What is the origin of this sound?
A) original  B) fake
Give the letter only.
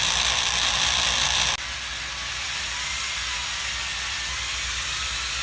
A